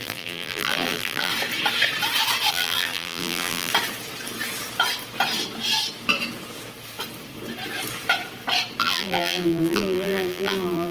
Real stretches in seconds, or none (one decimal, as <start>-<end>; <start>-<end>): 1.3-2.5; 3.7-8.8

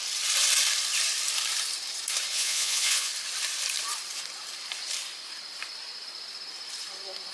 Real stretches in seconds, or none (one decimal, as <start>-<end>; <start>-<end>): 0.0-2.3; 3.1-7.3

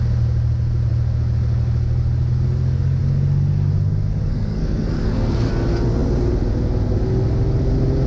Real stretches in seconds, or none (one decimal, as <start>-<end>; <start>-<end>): 0.0-4.3; 5.5-8.1

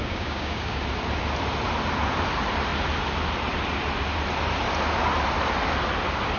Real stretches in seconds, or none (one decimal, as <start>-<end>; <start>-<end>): 0.8-6.4

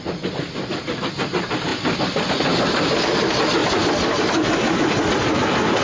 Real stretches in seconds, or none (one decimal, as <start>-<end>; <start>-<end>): 0.0-1.7; 2.3-5.8

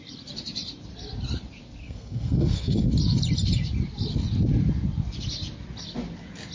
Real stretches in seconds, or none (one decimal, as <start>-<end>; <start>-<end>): 0.0-1.8; 2.9-6.5